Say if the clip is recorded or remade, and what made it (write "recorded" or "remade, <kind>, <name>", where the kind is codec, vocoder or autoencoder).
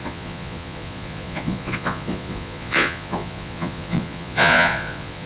remade, vocoder, Vocos